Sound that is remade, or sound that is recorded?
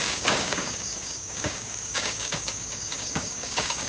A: remade